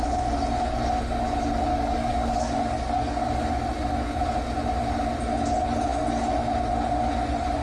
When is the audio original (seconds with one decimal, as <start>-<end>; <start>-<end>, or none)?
0.0-1.7; 3.5-7.6